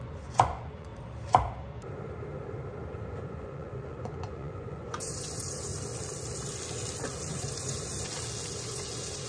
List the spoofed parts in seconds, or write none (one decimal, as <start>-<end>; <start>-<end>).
0.0-0.9; 3.1-5.7; 7.2-7.9; 8.5-9.3